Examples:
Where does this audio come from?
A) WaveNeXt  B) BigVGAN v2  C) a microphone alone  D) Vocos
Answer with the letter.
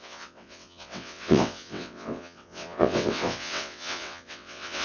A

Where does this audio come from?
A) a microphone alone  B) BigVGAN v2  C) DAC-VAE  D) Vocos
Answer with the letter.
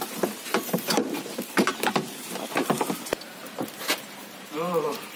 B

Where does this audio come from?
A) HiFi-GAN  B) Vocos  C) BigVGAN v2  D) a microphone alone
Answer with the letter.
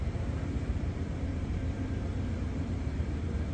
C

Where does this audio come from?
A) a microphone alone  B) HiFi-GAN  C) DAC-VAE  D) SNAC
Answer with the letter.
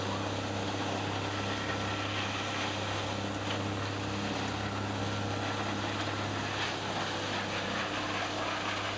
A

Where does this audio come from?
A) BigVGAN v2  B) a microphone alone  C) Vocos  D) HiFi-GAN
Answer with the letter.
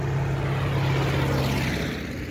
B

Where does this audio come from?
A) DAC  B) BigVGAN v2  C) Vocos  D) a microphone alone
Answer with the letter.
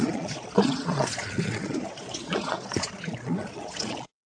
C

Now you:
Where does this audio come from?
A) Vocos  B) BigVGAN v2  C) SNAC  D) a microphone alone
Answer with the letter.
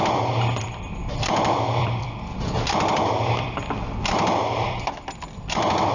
B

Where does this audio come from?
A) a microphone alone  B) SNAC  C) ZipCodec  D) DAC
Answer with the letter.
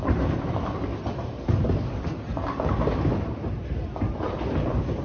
A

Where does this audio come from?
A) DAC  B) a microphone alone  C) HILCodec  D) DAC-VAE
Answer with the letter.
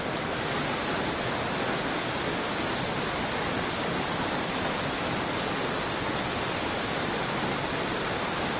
B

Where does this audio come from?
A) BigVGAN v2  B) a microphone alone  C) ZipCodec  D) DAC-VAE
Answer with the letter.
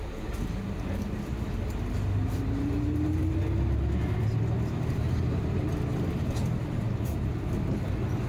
B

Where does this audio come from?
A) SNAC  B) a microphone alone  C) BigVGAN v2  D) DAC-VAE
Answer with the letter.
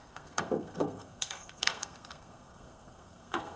A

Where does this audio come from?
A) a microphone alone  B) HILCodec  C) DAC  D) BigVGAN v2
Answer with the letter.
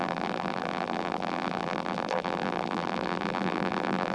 D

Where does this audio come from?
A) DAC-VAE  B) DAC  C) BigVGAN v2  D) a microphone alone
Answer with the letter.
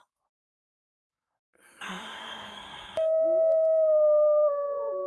B